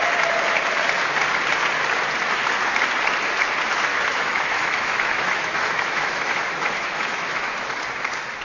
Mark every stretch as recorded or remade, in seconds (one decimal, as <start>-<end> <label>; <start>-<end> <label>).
0.0-3.9 recorded; 3.9-7.7 remade; 7.7-8.4 recorded